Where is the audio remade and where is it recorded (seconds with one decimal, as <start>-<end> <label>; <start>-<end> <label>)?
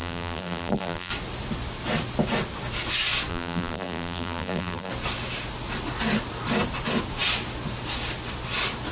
0.0-1.1 remade; 1.1-3.3 recorded; 3.3-4.9 remade; 4.9-8.9 recorded